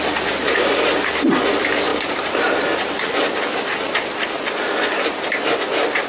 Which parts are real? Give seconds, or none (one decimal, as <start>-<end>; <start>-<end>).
0.0-6.1